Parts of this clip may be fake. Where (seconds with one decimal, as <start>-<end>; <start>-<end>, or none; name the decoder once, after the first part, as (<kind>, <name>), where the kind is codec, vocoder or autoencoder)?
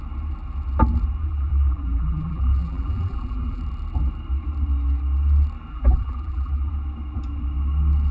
1.2-3.6 (vocoder, BigVGAN v2); 5.7-6.7